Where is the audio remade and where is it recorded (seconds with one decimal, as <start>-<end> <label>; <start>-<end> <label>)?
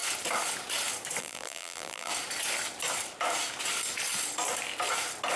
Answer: 0.0-1.2 recorded; 1.2-2.1 remade; 2.1-5.4 recorded